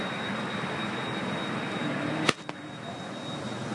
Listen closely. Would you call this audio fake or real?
real